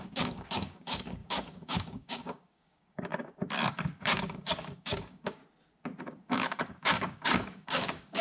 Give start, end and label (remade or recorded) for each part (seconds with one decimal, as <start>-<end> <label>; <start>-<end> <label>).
0.0-3.1 remade; 3.1-3.7 recorded; 3.7-5.4 remade; 5.4-6.0 recorded; 6.0-8.2 remade